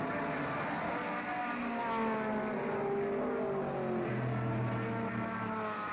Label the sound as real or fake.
real